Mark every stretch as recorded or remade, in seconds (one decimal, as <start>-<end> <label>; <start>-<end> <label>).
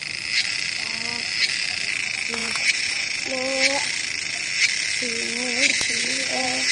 0.0-2.4 recorded; 2.4-3.2 remade; 3.2-5.7 recorded; 5.7-6.7 remade